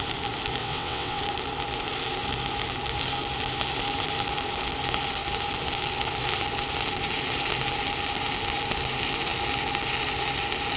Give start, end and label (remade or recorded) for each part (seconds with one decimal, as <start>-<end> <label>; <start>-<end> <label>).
0.0-0.6 recorded; 0.6-1.2 remade; 1.2-10.8 recorded